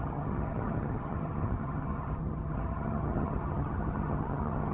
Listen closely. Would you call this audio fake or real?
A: fake